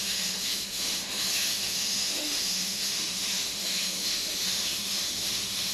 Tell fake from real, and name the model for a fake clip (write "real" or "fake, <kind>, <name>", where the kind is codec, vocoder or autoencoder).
fake, autoencoder, DAC-VAE